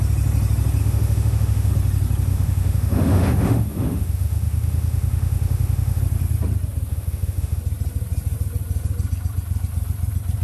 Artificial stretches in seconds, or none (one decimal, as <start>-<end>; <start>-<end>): 0.8-1.7; 2.3-6.0; 6.9-7.6